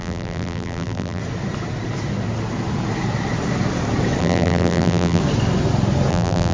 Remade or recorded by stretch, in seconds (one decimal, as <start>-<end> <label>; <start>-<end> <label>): 0.0-1.2 remade; 1.2-4.2 recorded; 4.2-5.2 remade; 5.2-6.1 recorded; 6.1-6.5 remade